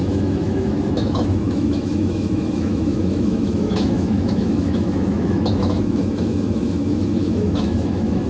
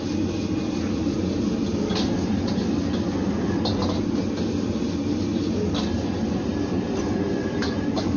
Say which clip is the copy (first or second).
first